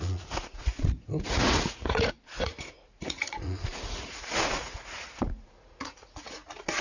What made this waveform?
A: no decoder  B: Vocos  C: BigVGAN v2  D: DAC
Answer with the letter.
B